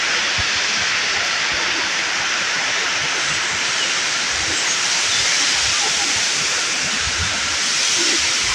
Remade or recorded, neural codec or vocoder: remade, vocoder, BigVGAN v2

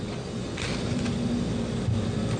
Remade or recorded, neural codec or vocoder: recorded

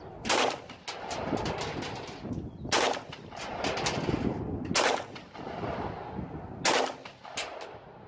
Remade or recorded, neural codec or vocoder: recorded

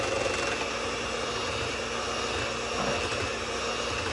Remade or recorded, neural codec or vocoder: recorded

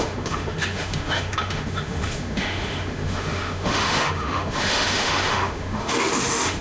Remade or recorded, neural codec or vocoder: remade, autoencoder, DAC-VAE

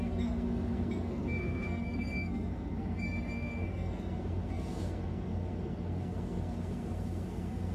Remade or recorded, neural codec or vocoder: remade, codec, SNAC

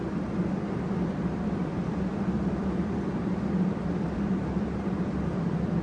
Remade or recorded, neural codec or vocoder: remade, vocoder, BigVGAN v2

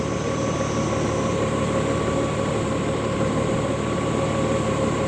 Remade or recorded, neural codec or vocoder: recorded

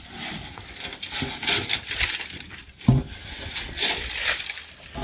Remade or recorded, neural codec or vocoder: recorded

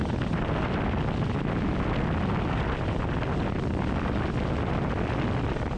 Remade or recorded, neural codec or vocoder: recorded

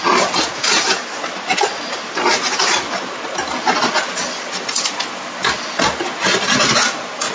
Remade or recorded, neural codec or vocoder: recorded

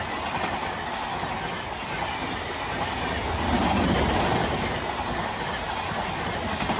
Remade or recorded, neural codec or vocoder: recorded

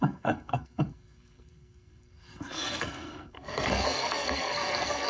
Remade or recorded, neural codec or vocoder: remade, codec, SNAC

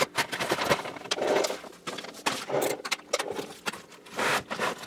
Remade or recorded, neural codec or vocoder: recorded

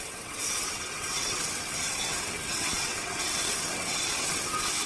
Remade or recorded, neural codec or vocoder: remade, vocoder, WaveNeXt